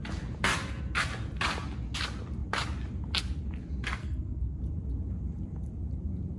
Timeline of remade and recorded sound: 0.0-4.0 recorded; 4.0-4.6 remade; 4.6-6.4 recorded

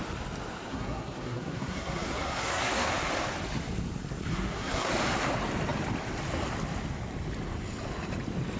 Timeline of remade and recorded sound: 0.0-0.7 recorded; 0.7-2.9 remade; 2.9-4.3 recorded; 4.3-4.9 remade; 4.9-8.6 recorded

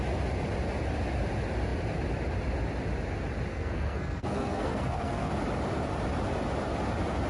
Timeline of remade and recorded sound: 0.0-3.5 recorded; 3.5-5.3 remade; 5.3-7.3 recorded

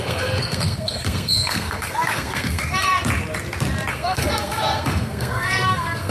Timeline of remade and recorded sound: 0.0-2.9 remade; 2.9-3.9 recorded; 3.9-6.1 remade

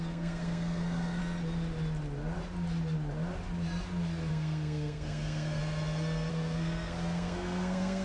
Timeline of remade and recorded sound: 0.0-1.2 remade; 1.2-4.3 recorded; 4.3-5.6 remade; 5.6-6.3 recorded; 6.3-8.0 remade

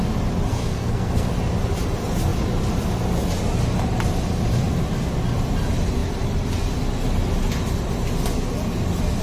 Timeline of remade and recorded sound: 0.0-0.5 recorded; 0.5-1.3 remade; 1.3-9.2 recorded

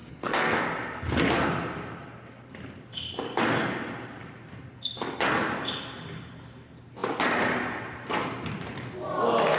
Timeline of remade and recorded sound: 0.0-0.6 remade; 0.6-9.6 recorded